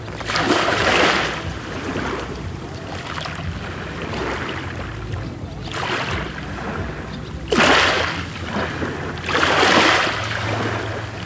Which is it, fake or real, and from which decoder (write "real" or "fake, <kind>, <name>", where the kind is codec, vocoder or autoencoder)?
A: real